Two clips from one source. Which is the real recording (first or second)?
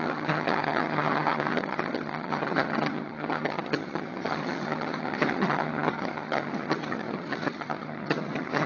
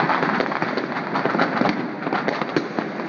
second